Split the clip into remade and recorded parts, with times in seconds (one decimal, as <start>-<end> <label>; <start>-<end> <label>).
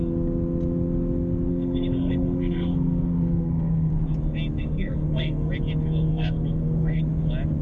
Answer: 0.0-1.5 recorded; 1.5-3.9 remade; 3.9-4.6 recorded; 4.6-5.5 remade; 5.5-6.1 recorded; 6.1-7.0 remade; 7.0-7.6 recorded